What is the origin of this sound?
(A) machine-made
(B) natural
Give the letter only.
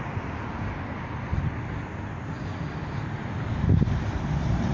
B